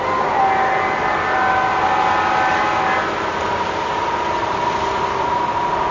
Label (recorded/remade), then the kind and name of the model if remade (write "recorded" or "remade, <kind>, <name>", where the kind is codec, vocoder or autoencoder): recorded